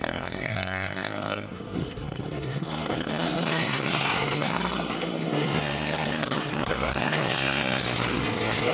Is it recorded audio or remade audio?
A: remade